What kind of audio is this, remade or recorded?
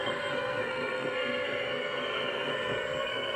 remade